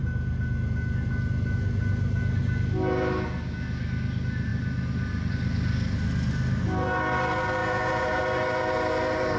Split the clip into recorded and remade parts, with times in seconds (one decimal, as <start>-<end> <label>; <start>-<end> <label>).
0.0-7.6 recorded; 7.6-8.2 remade; 8.2-9.4 recorded